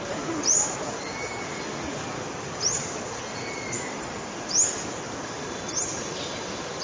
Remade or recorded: recorded